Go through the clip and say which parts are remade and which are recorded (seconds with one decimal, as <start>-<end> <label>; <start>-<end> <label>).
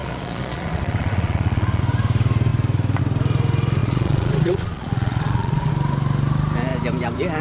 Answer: 0.0-1.8 remade; 1.8-3.8 recorded; 3.8-5.7 remade; 5.7-7.4 recorded